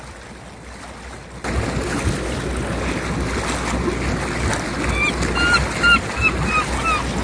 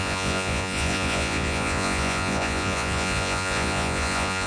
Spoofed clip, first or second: second